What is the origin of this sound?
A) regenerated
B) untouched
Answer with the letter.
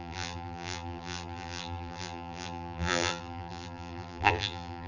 A